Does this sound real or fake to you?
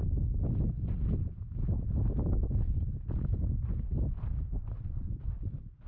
real